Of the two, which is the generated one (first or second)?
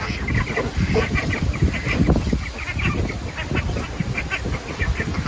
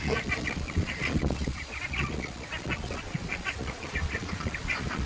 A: second